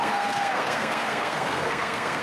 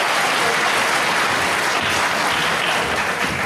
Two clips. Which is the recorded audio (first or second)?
second